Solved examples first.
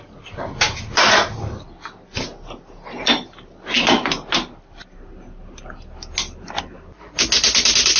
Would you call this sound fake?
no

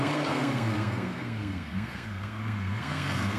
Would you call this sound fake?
yes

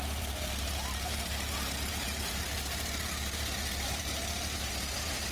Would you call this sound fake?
yes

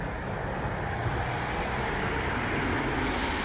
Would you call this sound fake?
no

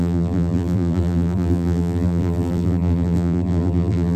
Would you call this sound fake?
yes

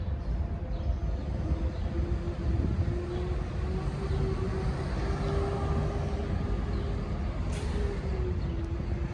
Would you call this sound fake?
no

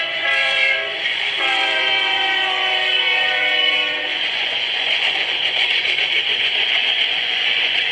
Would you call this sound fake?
yes